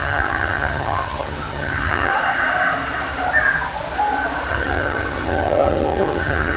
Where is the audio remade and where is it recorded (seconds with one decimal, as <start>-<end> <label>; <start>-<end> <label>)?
0.0-2.1 remade; 2.1-4.5 recorded; 4.5-6.6 remade